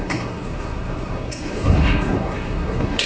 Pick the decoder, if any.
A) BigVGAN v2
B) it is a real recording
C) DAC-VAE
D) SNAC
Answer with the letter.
D